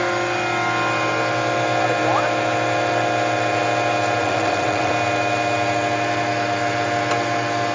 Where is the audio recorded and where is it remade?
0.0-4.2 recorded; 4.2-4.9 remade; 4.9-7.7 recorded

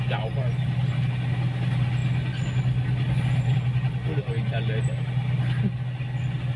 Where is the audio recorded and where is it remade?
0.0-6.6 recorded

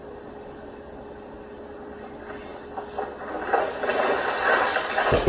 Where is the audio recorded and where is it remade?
0.0-5.3 recorded

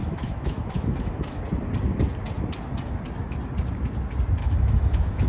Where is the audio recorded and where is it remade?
0.0-1.4 remade; 1.4-4.4 recorded; 4.4-5.3 remade

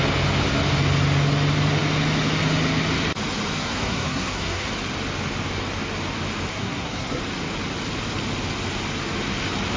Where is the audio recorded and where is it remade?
0.0-3.6 recorded; 3.6-4.7 remade; 4.7-6.5 recorded; 6.5-7.2 remade; 7.2-9.8 recorded